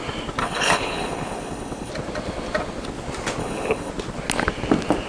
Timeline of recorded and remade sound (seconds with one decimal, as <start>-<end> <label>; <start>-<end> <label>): 0.0-0.4 recorded; 0.4-1.9 remade; 1.9-3.4 recorded; 3.4-3.9 remade; 3.9-5.1 recorded